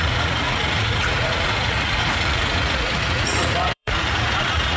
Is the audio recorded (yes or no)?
no